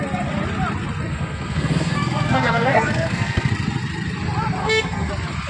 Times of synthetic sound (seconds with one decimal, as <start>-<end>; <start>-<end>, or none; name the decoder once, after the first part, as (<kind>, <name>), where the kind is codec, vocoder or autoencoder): 1.1-3.5 (codec, SNAC); 4.6-5.1